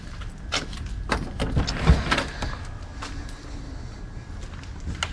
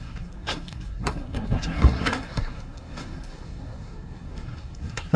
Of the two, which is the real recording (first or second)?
first